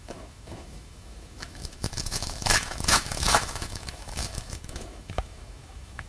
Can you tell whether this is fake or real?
fake